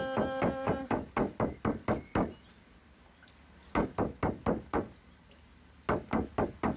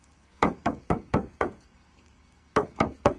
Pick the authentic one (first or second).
first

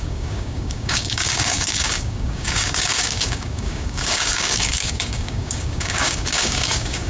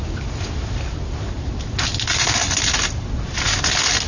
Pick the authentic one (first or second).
second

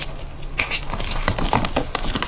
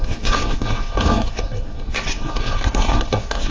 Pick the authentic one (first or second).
first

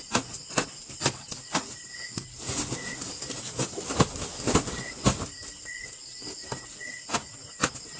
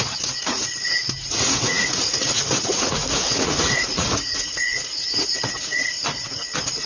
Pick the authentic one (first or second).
first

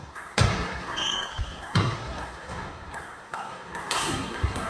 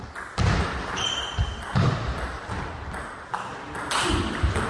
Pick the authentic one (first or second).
second